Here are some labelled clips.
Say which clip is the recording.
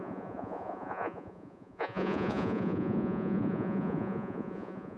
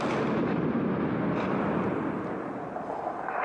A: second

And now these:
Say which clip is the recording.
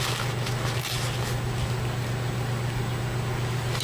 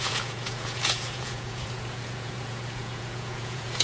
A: first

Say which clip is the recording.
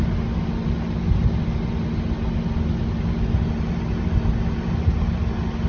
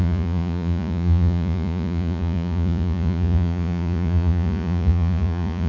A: first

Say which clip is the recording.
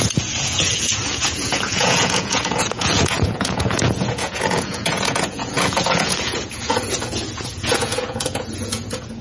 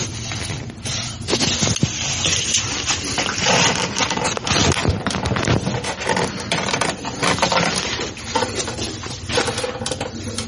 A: second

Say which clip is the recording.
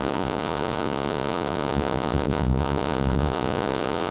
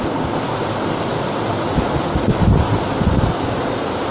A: second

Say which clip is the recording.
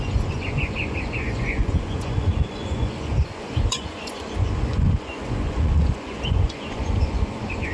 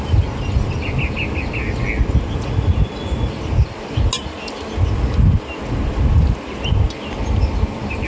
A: second